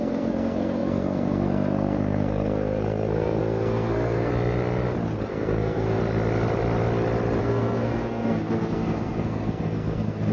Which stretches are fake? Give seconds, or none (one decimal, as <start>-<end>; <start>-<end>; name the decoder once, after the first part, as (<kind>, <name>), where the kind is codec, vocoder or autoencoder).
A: 0.0-4.3 (codec, SNAC); 5.3-6.0; 7.4-10.3